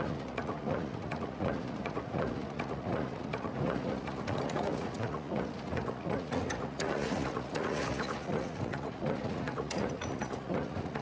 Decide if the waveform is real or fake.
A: fake